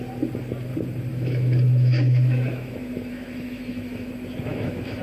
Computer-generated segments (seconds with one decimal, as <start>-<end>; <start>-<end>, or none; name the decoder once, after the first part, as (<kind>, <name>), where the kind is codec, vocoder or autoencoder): 1.1-4.1 (autoencoder, DAC-VAE); 4.5-5.0